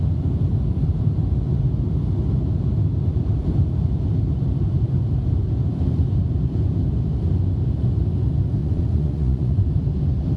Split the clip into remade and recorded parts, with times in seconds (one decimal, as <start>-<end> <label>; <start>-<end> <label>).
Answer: 0.0-8.6 recorded; 8.6-9.7 remade; 9.7-10.4 recorded